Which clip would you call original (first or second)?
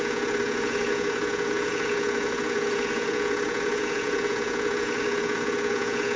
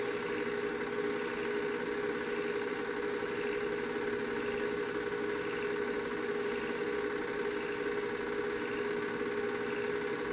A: second